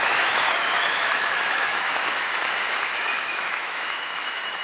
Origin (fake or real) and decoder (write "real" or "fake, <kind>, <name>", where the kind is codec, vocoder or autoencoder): fake, autoencoder, DAC-VAE